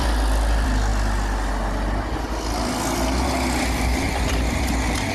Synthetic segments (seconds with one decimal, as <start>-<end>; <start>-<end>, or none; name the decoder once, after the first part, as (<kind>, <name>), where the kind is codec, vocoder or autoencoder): 0.0-0.9 (vocoder, BigVGAN v2); 3.7-5.1